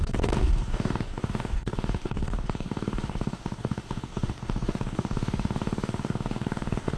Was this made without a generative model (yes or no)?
no